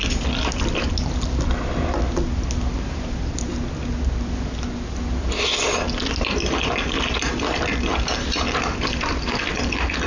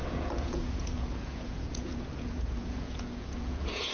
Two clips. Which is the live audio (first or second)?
first